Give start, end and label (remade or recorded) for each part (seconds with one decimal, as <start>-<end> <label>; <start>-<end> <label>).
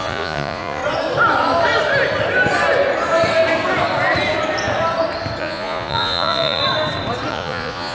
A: 0.0-0.8 remade; 0.8-5.4 recorded; 5.4-6.6 remade; 6.6-7.3 recorded; 7.3-7.9 remade